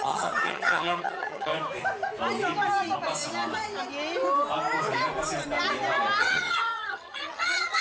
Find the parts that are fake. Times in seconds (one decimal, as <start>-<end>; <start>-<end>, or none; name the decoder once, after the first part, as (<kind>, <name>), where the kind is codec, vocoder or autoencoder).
0.0-1.5 (vocoder, HiFi-GAN); 6.2-7.8